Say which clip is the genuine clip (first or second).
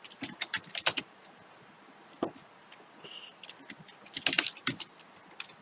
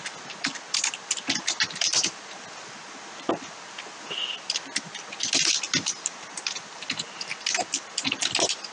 second